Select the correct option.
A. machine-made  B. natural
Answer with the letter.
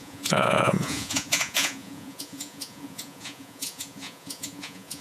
A